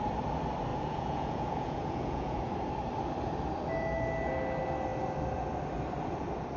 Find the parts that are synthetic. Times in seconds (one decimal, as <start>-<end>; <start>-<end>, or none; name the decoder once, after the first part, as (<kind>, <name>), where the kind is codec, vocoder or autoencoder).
0.7-2.5 (vocoder, Vocos)